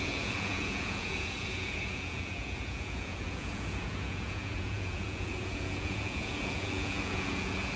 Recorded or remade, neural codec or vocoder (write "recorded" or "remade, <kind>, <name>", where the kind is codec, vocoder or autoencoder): remade, vocoder, Vocos